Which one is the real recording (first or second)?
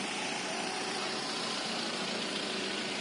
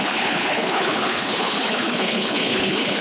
first